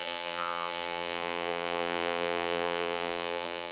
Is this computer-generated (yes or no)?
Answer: yes